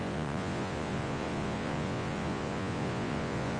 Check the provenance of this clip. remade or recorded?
remade